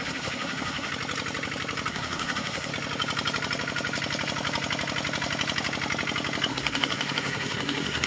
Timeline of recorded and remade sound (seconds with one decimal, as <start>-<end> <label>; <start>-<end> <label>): 0.0-0.9 remade; 0.9-1.9 recorded; 1.9-2.7 remade; 2.7-6.5 recorded; 6.5-8.1 remade

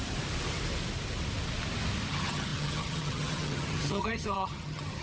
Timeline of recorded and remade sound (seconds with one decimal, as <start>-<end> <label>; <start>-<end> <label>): 0.0-2.1 recorded; 2.1-5.0 remade

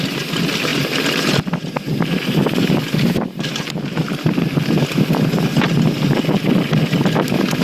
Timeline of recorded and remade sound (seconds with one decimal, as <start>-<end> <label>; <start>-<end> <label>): 0.0-7.6 recorded

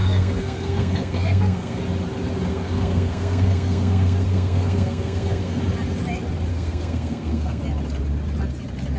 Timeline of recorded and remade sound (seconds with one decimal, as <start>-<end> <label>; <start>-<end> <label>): 0.0-1.8 remade; 1.8-2.5 recorded; 2.5-5.6 remade; 5.6-6.5 recorded; 6.5-7.6 remade; 7.6-9.0 recorded

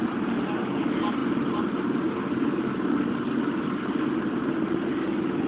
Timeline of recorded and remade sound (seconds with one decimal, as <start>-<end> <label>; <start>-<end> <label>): 0.0-5.5 recorded

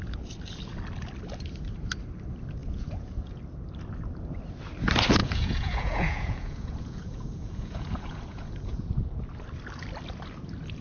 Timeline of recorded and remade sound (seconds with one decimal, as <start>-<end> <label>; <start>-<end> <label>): 0.0-2.6 recorded; 2.6-3.4 remade; 3.4-5.2 recorded; 5.2-9.1 remade; 9.1-10.8 recorded

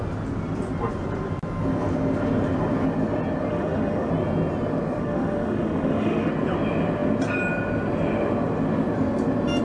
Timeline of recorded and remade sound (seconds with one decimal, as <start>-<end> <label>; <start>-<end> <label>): 0.0-3.5 recorded; 3.5-4.1 remade; 4.1-5.0 recorded; 5.0-6.3 remade; 6.3-9.6 recorded

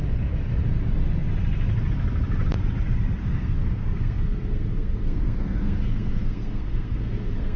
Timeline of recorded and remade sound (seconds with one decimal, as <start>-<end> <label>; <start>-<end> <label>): 0.0-3.2 recorded; 3.2-7.6 remade